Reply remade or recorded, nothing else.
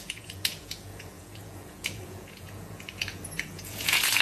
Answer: remade